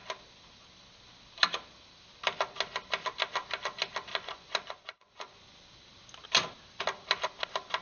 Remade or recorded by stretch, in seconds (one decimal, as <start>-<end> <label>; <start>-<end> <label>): 0.0-4.1 recorded; 4.1-5.6 remade; 5.6-7.8 recorded